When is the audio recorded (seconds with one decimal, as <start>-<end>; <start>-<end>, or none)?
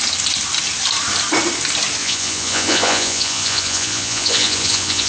0.0-2.0